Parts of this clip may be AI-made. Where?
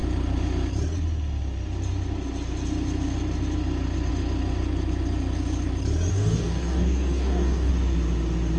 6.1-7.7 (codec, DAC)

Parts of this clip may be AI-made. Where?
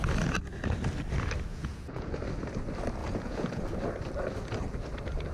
1.5-2.1 (vocoder, Vocos); 3.0-3.6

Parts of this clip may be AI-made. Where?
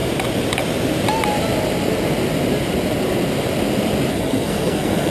4.1-5.1 (codec, SNAC)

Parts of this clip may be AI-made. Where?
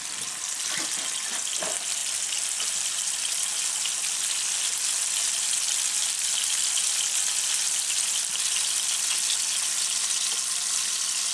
none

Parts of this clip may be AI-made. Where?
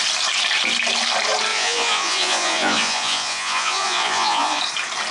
1.5-4.6 (vocoder, Vocos)